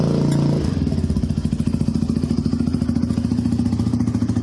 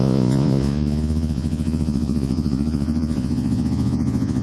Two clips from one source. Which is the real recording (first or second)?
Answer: first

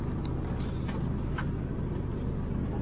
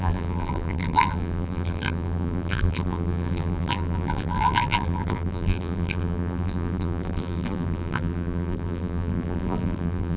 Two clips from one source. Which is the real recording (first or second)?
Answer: first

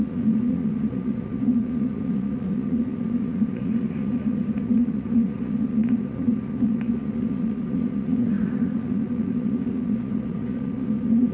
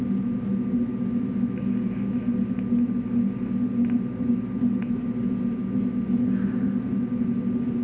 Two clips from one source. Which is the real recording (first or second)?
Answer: second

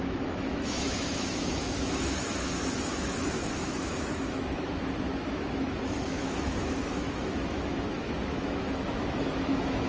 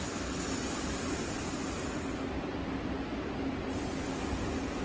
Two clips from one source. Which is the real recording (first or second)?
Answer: second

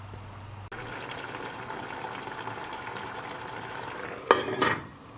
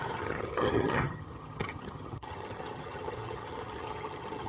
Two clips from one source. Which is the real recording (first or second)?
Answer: first